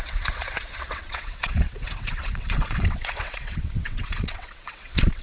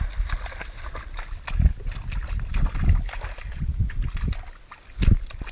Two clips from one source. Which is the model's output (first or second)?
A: first